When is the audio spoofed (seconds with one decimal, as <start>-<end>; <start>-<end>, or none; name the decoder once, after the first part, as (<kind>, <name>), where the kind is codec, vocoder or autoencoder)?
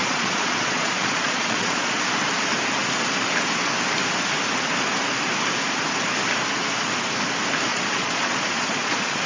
0.0-2.0 (vocoder, Vocos); 7.7-9.3